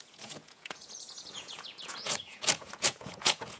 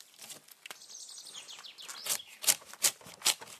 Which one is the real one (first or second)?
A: second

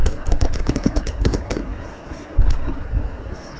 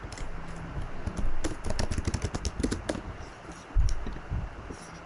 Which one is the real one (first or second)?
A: second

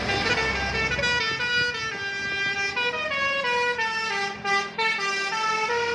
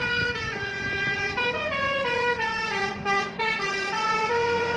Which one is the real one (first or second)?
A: first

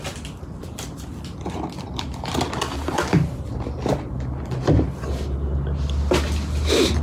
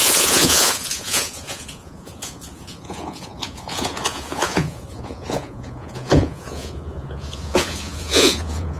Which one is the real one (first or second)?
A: first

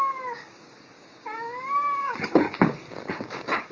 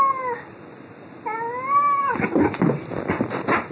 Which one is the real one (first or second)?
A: second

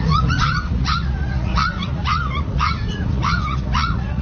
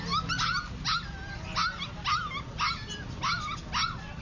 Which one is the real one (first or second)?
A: second